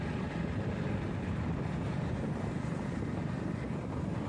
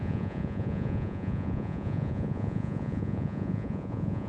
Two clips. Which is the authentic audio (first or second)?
first